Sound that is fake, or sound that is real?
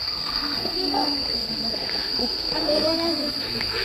fake